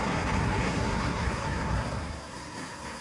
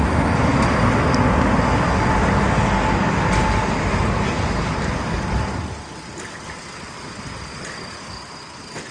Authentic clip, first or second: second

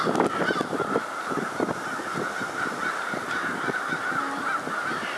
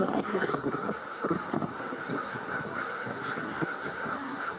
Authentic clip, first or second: first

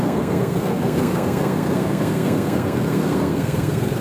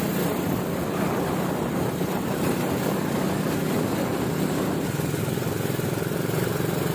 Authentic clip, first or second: second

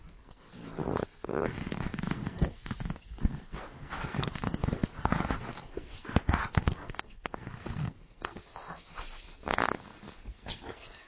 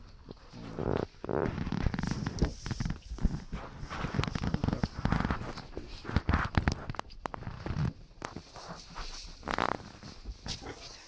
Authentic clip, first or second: second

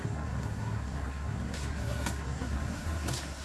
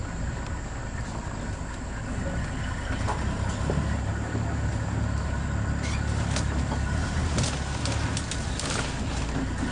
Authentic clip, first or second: second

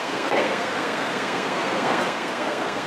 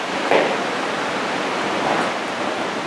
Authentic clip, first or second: second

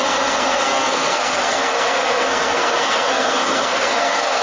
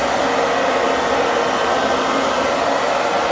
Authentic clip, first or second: second